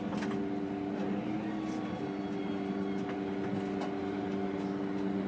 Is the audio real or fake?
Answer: real